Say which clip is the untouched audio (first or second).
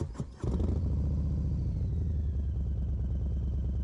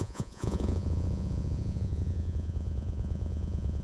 first